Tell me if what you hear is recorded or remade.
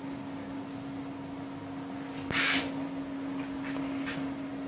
recorded